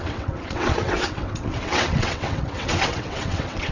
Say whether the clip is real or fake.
fake